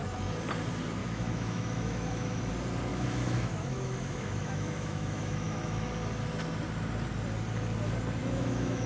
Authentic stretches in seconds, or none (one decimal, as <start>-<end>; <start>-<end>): 0.0-1.0; 2.5-2.9; 5.9-8.2